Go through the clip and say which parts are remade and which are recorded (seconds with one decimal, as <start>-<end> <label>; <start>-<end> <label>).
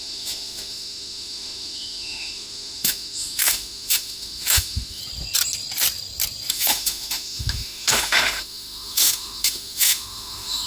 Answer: 0.0-5.0 remade; 5.0-6.5 recorded; 6.5-10.7 remade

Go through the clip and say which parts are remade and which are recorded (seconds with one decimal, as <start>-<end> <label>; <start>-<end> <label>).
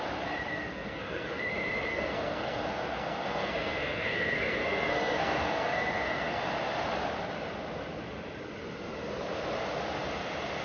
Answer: 0.0-0.5 recorded; 0.5-1.4 remade; 1.4-1.9 recorded; 1.9-6.4 remade; 6.4-10.6 recorded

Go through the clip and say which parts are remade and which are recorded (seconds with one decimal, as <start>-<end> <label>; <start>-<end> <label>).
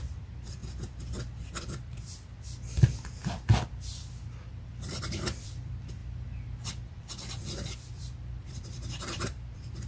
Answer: 0.0-0.6 remade; 0.6-1.6 recorded; 1.6-6.0 remade; 6.0-6.7 recorded; 6.7-9.9 remade